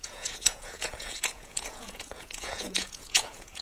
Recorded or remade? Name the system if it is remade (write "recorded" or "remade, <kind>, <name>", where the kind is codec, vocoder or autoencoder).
remade, vocoder, Vocos